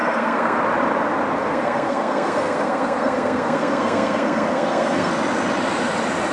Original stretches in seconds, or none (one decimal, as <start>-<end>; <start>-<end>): 0.6-1.4; 5.1-6.3